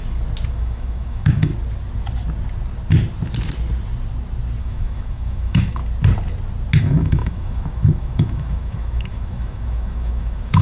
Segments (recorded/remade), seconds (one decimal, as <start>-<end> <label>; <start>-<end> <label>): 0.0-0.5 recorded; 0.5-1.5 remade; 1.5-4.6 recorded; 4.6-5.8 remade; 5.8-6.8 recorded; 6.8-10.6 remade